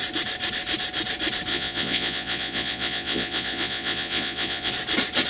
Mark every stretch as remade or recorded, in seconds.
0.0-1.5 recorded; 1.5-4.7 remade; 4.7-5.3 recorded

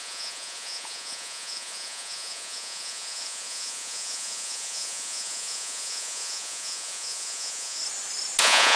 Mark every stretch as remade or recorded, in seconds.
0.0-7.8 remade; 7.8-8.4 recorded; 8.4-8.8 remade

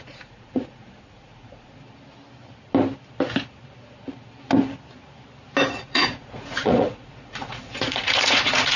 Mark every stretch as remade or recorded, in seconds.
0.0-1.8 remade; 1.8-5.8 recorded; 5.8-8.8 remade

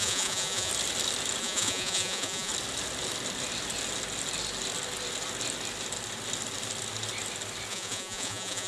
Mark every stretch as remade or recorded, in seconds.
0.0-0.7 remade; 0.7-1.4 recorded; 1.4-2.5 remade; 2.5-7.7 recorded; 7.7-8.7 remade

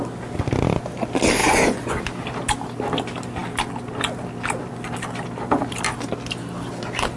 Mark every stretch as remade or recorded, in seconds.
0.0-1.4 recorded; 1.4-2.0 remade; 2.0-7.2 recorded

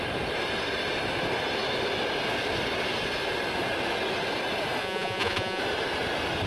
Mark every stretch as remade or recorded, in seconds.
0.0-4.8 recorded; 4.8-5.6 remade; 5.6-6.5 recorded

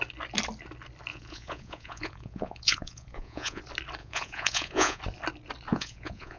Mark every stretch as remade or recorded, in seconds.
0.0-1.1 recorded; 1.1-3.6 remade; 3.6-4.0 recorded; 4.0-5.0 remade; 5.0-5.7 recorded; 5.7-6.4 remade